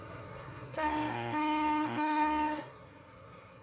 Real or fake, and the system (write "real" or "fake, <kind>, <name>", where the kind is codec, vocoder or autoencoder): fake, codec, SNAC